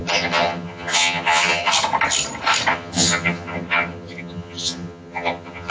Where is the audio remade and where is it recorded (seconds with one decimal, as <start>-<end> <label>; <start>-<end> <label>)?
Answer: 0.0-1.7 remade; 1.7-2.7 recorded; 2.7-5.7 remade